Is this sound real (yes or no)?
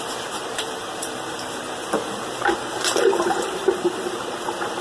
no